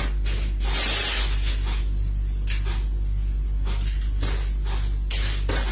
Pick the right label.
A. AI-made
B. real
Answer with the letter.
B